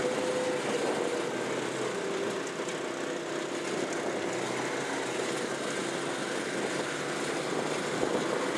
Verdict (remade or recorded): recorded